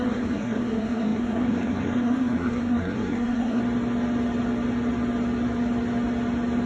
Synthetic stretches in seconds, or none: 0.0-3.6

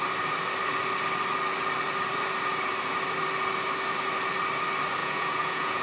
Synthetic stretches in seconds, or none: 5.0-5.8

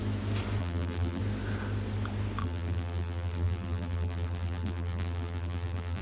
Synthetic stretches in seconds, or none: 0.6-1.2; 2.4-6.0

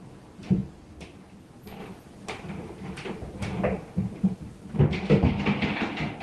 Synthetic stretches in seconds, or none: none